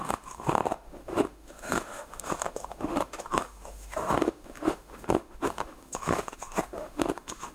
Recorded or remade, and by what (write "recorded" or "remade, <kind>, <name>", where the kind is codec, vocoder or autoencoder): remade, autoencoder, DAC-VAE